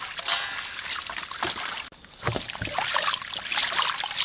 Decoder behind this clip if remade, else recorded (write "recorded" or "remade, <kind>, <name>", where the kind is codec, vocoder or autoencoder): recorded